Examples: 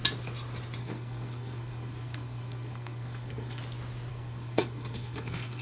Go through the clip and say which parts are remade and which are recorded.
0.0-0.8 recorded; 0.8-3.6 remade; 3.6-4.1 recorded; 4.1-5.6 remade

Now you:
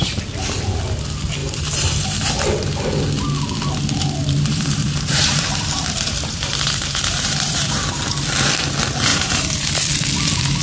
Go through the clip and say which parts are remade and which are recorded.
0.0-1.4 recorded; 1.4-2.2 remade; 2.2-4.2 recorded; 4.2-8.0 remade; 8.0-9.1 recorded; 9.1-9.7 remade; 9.7-10.6 recorded

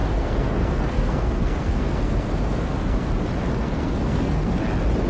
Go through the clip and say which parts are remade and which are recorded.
0.0-3.1 remade; 3.1-3.5 recorded; 3.5-4.6 remade; 4.6-5.1 recorded